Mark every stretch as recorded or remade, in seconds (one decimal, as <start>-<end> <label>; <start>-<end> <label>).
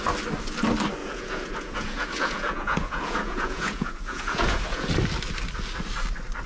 0.0-1.0 recorded; 1.0-4.9 remade; 4.9-6.5 recorded